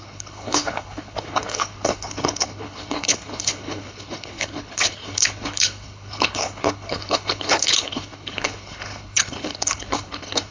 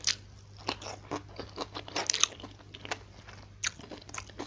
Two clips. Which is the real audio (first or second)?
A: second